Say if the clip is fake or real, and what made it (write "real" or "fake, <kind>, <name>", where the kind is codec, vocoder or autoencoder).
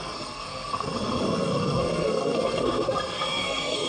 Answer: fake, codec, SNAC